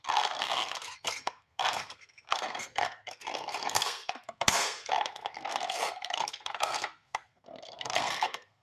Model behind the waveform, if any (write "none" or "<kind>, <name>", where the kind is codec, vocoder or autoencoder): codec, SNAC